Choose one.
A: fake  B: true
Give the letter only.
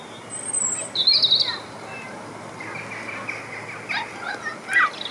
B